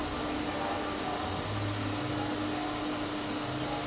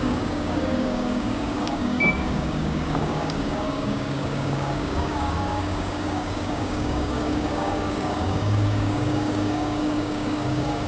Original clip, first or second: first